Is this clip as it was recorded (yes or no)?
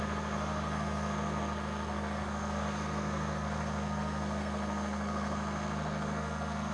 no